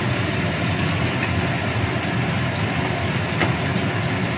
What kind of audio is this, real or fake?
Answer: real